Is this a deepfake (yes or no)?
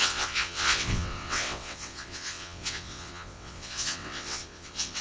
yes